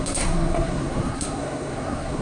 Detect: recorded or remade remade